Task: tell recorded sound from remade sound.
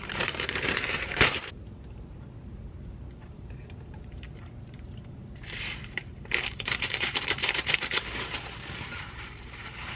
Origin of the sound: remade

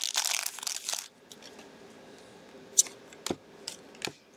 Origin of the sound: recorded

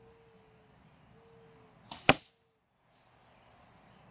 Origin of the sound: recorded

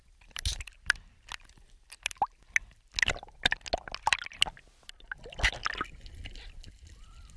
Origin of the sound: recorded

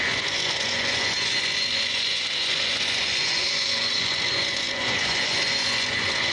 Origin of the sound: remade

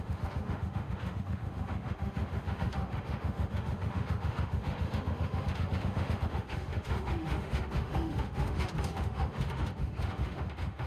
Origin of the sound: remade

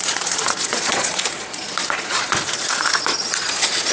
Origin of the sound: remade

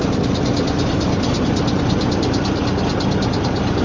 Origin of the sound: recorded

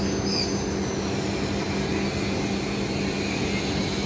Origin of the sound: recorded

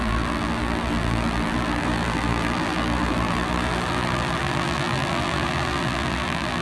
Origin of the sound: remade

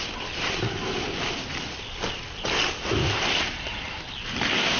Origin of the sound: recorded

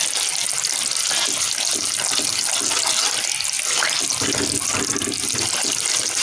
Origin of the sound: recorded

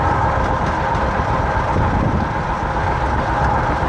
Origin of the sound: recorded